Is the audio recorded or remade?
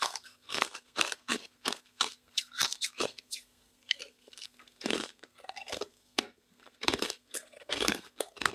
remade